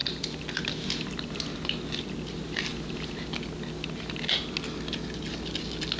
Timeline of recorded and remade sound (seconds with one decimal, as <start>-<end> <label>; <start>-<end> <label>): 0.0-6.0 recorded